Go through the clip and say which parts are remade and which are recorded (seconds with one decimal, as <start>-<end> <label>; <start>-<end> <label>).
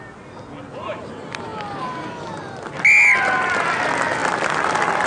0.0-5.1 recorded